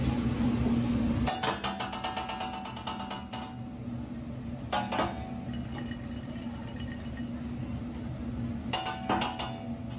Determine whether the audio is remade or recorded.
recorded